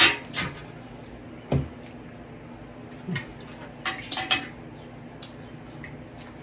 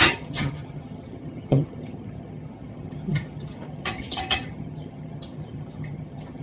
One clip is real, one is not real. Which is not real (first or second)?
second